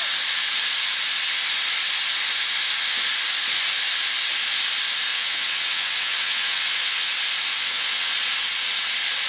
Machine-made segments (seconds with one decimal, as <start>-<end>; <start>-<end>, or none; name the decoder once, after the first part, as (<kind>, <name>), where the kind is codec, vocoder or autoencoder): 5.1-7.1 (vocoder, WaveNeXt); 7.5-8.1